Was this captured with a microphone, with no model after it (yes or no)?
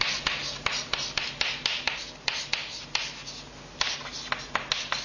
yes